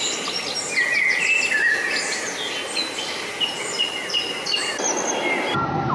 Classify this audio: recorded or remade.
recorded